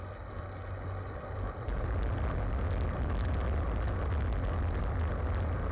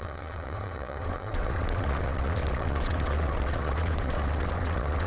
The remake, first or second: second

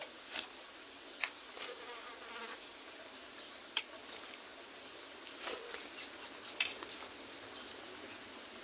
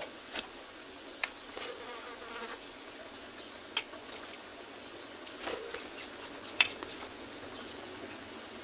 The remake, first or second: second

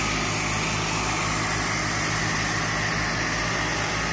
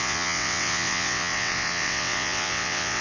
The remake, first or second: second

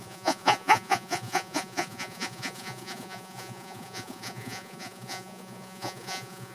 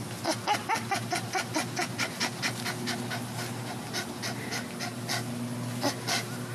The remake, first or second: first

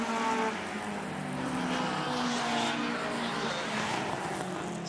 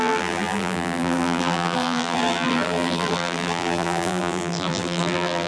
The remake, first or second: second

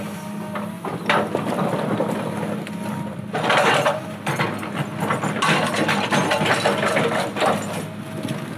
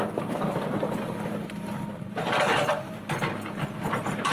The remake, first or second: second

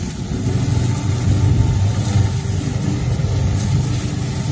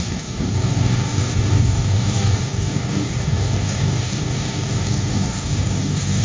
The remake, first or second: second